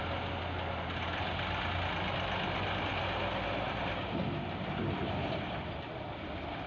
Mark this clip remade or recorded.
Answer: recorded